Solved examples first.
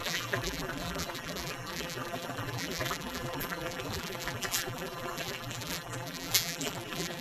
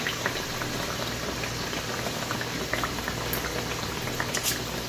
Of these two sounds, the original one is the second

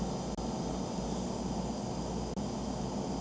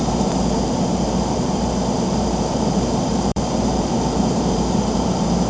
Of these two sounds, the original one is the first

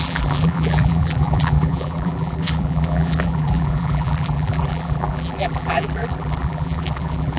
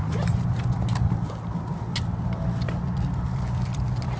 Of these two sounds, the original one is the second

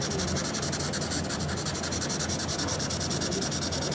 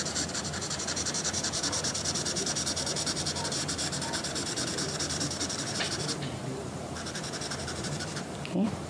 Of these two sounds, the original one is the first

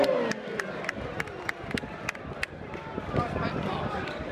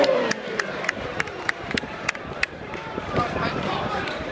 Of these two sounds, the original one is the first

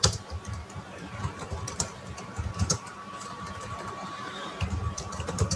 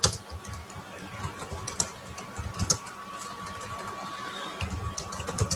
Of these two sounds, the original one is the second